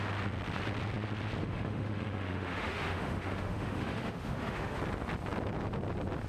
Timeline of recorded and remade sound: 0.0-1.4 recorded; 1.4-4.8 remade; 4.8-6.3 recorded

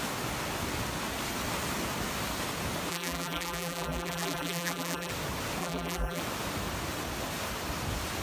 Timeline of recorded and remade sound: 0.0-2.9 recorded; 2.9-5.1 remade; 5.1-5.6 recorded; 5.6-6.2 remade; 6.2-8.2 recorded